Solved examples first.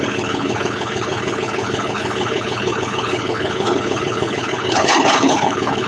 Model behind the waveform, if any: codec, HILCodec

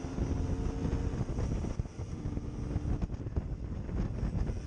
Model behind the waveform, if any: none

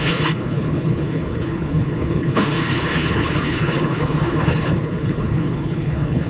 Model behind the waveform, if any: codec, HILCodec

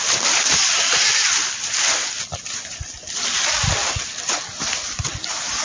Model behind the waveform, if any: none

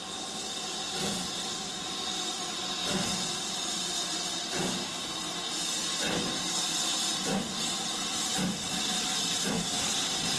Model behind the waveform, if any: none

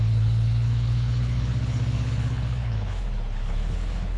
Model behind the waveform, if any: codec, HILCodec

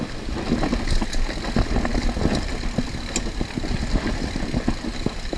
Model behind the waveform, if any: none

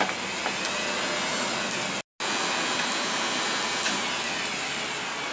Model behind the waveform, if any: none